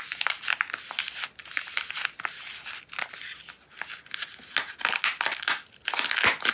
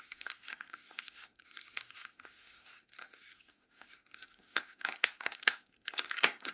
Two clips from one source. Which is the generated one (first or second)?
second